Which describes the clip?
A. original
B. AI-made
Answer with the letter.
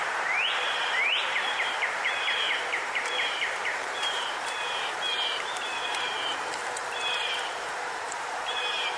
B